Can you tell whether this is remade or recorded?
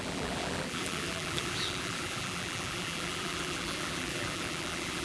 remade